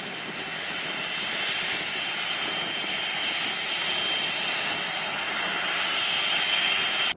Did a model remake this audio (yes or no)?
no